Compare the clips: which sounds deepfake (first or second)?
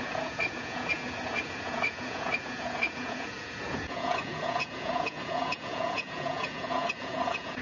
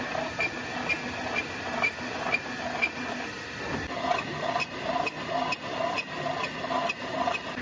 first